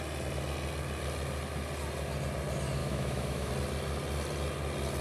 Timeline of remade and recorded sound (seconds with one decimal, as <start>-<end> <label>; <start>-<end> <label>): 0.0-2.8 recorded; 2.8-3.5 remade; 3.5-5.0 recorded